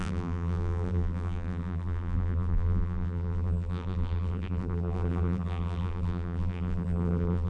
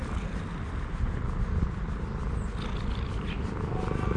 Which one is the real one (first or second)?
second